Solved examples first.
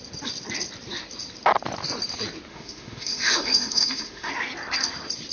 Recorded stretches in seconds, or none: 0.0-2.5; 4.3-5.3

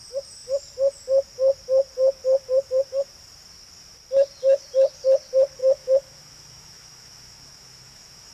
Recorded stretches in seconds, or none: 0.0-5.6

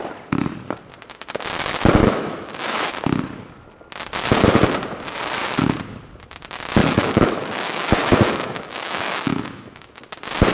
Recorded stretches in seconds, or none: 0.0-2.0; 2.9-6.8; 10.0-10.5